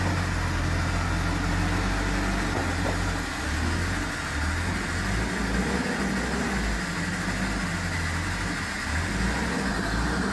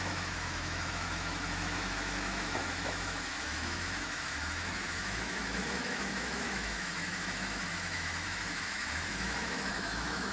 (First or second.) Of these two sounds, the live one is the first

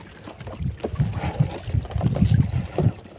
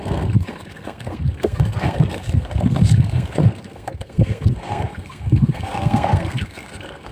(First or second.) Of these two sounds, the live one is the first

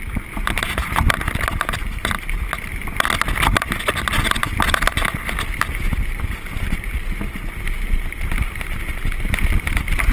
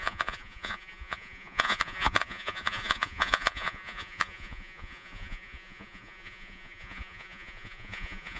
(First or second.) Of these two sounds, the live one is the first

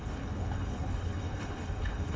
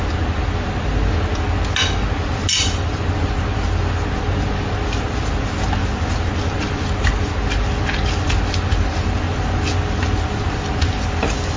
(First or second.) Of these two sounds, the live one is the second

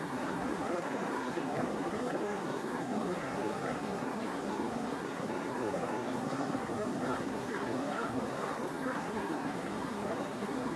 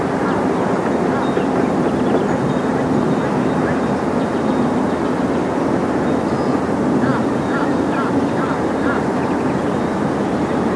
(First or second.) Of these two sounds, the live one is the second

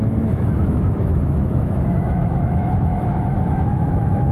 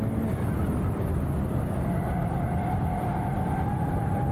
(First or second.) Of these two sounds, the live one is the second